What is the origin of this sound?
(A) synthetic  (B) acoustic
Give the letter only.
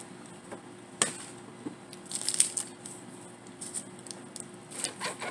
B